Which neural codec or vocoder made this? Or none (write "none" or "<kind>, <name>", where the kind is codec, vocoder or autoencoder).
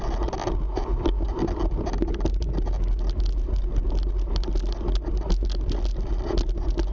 none